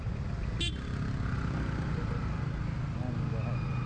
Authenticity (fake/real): real